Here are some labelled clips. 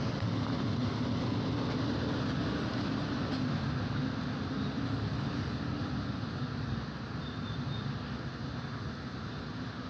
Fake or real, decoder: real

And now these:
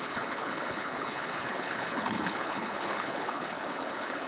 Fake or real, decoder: fake, codec, HILCodec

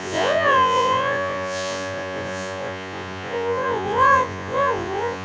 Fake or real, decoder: fake, vocoder, Vocos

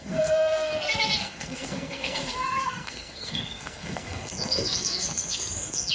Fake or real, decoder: fake, codec, SNAC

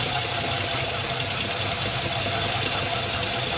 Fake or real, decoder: real